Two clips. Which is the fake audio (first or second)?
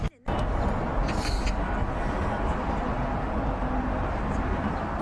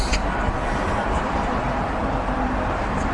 second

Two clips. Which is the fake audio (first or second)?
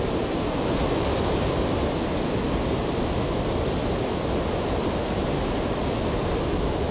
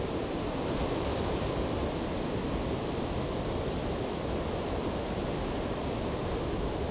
second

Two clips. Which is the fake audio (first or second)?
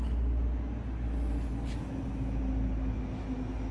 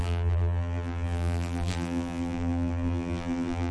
second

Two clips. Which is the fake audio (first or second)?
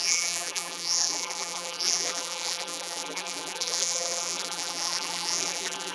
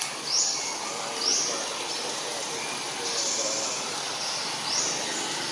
first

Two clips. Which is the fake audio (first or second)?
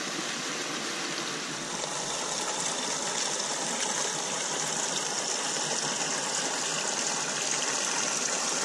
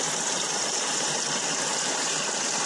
second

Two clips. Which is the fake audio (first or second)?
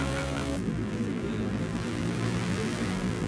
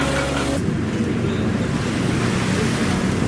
first